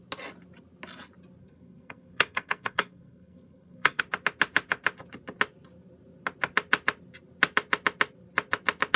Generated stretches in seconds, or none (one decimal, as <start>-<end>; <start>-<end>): 1.4-4.0